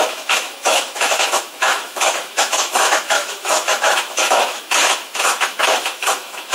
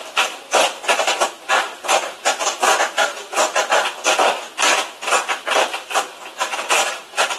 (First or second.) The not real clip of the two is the first